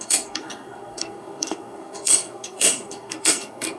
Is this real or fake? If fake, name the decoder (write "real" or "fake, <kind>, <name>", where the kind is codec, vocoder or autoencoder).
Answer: fake, codec, SNAC